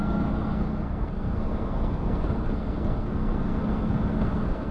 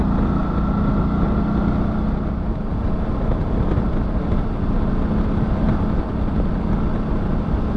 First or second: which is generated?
first